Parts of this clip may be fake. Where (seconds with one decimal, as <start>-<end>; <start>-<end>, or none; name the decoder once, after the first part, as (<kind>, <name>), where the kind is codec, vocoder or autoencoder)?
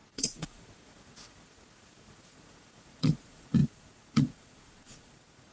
0.0-5.5 (vocoder, Vocos)